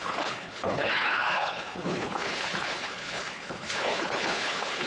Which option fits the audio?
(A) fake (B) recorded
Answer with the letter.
A